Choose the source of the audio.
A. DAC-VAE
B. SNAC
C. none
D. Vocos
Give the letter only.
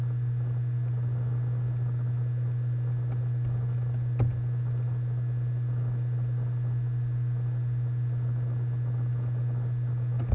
C